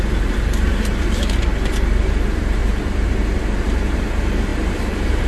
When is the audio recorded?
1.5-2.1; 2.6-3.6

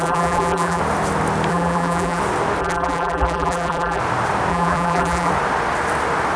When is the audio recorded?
0.8-1.5; 2.2-2.6; 4.0-4.5; 5.3-6.4